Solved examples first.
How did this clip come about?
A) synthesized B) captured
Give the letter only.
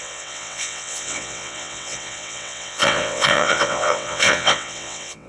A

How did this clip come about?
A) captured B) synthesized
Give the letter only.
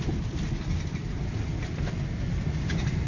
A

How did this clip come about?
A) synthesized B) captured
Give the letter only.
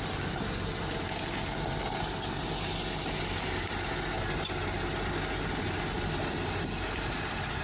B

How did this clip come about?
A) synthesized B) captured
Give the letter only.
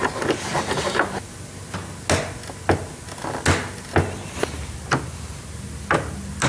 B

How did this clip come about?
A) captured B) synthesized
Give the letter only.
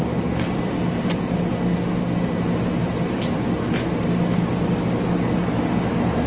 A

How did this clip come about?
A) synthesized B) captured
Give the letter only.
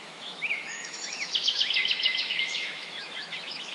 A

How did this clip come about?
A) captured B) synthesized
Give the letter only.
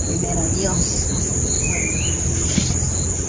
A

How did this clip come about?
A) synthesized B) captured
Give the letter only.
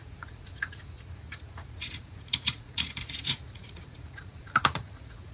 A